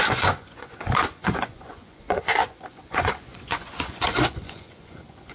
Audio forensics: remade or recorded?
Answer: remade